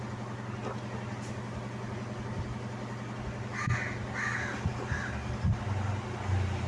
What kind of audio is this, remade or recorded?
recorded